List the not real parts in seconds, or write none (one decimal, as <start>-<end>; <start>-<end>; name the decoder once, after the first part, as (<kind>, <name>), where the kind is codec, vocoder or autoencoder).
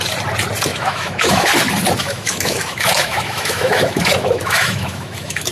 0.7-1.5 (autoencoder, DAC-VAE); 2.0-5.5